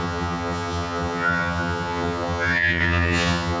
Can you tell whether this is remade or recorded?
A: remade